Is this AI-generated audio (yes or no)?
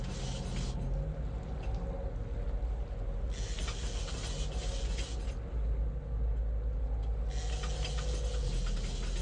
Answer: no